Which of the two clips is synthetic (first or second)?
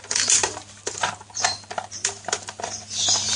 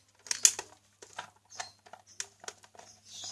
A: first